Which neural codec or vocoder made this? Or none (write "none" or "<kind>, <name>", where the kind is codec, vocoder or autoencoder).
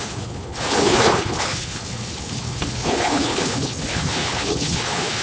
codec, HILCodec